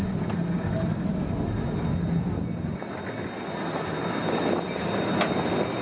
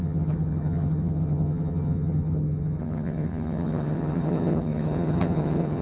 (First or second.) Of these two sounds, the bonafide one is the first